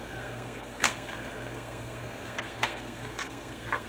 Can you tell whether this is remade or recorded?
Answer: remade